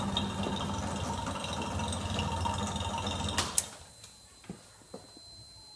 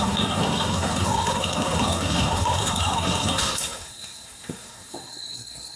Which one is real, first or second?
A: first